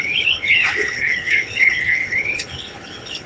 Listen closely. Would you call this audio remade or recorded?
remade